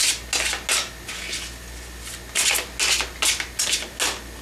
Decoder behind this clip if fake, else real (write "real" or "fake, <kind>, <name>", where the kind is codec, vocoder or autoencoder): real